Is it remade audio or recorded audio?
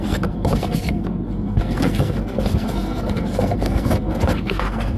remade